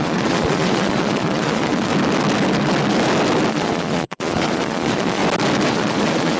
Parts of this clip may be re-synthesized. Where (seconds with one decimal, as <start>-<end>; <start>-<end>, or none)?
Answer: 0.0-1.9; 3.5-5.2; 5.7-6.4